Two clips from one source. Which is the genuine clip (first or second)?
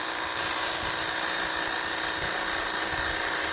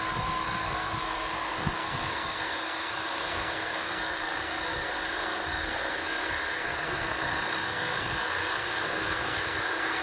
first